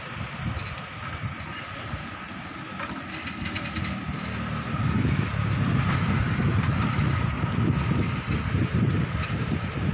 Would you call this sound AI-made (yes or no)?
no